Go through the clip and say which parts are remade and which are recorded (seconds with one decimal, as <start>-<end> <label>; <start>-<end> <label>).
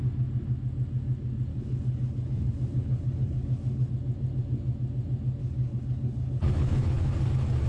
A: 0.0-1.5 recorded; 1.5-3.9 remade; 3.9-5.4 recorded; 5.4-7.3 remade; 7.3-7.7 recorded